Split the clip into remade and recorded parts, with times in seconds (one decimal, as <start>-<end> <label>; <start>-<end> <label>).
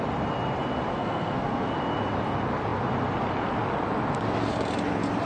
0.0-0.9 recorded; 0.9-1.7 remade; 1.7-5.3 recorded